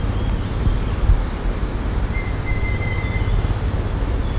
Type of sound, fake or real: real